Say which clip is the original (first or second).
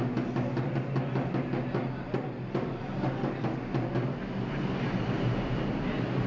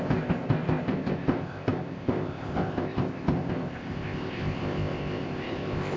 first